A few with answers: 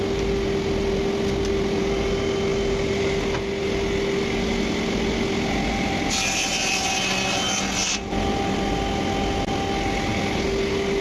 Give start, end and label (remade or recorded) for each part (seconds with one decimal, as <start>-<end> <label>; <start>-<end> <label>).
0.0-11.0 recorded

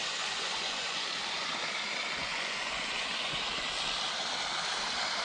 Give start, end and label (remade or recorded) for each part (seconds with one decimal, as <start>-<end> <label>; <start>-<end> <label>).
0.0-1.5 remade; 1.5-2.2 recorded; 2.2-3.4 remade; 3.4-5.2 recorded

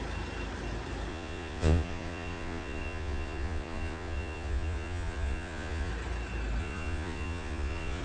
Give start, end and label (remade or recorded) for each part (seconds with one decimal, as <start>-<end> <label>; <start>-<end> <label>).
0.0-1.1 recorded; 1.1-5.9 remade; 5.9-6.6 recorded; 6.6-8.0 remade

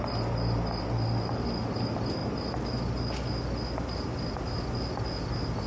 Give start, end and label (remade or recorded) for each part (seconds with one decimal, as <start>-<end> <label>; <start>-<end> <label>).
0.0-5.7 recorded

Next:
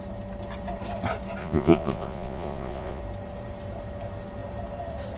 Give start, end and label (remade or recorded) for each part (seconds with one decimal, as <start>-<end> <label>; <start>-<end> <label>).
0.0-1.4 recorded; 1.4-3.0 remade; 3.0-5.2 recorded